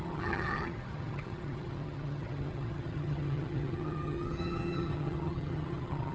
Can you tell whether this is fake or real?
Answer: fake